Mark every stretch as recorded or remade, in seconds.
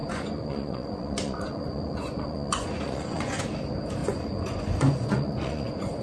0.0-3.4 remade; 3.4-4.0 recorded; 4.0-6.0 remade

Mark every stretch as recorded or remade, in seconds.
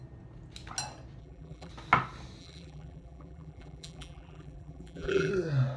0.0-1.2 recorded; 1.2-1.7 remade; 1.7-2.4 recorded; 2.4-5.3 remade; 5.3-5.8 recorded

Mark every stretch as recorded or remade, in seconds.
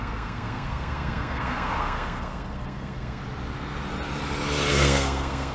0.0-3.2 remade; 3.2-4.7 recorded; 4.7-5.5 remade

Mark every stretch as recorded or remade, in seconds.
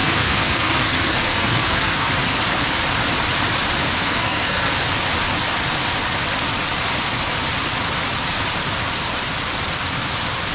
0.0-2.1 remade; 2.1-4.0 recorded; 4.0-4.8 remade; 4.8-10.5 recorded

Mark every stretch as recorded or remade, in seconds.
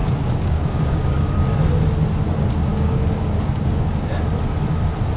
0.0-1.3 remade; 1.3-2.7 recorded; 2.7-3.9 remade; 3.9-5.2 recorded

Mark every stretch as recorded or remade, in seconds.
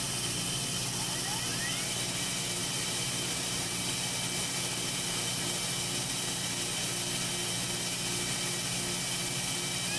0.0-2.6 recorded; 2.6-3.9 remade; 3.9-10.0 recorded